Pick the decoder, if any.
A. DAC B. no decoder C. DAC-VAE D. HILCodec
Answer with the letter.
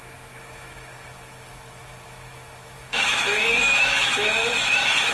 C